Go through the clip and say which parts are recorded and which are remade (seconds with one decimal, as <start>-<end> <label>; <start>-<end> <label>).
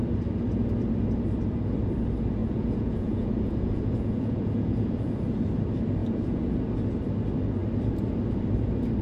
0.0-2.4 recorded; 2.4-5.1 remade; 5.1-6.0 recorded; 6.0-6.5 remade; 6.5-9.0 recorded